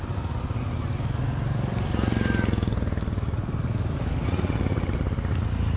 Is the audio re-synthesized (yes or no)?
no